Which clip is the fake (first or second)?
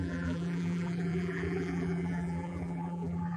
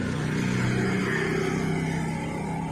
first